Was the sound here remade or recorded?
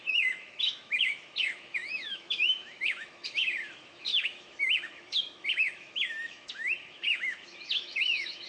remade